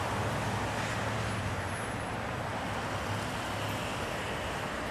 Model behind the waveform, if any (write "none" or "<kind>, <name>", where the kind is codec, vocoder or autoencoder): none